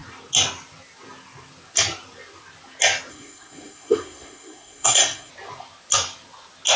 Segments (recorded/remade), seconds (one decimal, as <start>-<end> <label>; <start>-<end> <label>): 0.0-3.1 recorded; 3.1-5.3 remade; 5.3-6.8 recorded